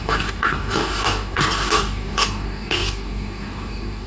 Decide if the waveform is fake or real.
fake